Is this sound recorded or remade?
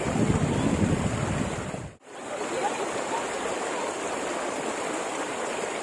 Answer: recorded